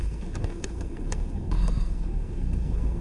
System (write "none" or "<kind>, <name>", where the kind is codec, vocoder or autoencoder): codec, SNAC